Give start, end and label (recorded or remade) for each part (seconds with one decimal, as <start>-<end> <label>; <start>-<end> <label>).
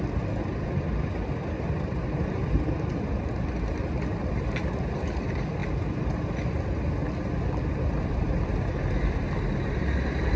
0.0-10.4 recorded